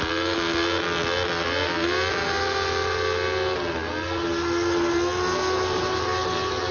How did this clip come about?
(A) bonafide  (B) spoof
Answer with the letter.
A